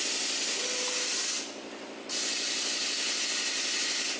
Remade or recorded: recorded